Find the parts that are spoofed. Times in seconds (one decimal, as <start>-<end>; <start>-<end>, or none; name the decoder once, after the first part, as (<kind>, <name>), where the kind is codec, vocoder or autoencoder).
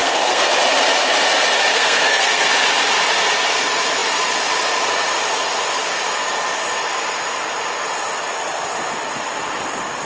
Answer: 0.0-0.5 (codec, SNAC); 1.7-2.5